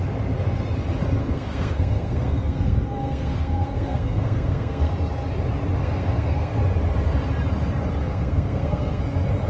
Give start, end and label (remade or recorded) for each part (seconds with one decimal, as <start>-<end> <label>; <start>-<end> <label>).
0.0-1.2 recorded; 1.2-4.9 remade; 4.9-5.8 recorded; 5.8-6.6 remade; 6.6-8.0 recorded; 8.0-9.0 remade; 9.0-9.5 recorded